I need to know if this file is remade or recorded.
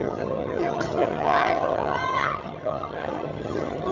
remade